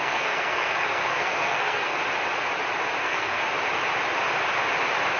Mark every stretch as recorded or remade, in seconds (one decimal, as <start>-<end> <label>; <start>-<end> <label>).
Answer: 0.0-2.0 remade; 2.0-3.0 recorded; 3.0-3.4 remade; 3.4-5.2 recorded